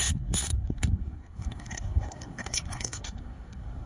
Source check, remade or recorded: remade